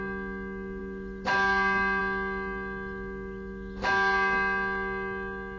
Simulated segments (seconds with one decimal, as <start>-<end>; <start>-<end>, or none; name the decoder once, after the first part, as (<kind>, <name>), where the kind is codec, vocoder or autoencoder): none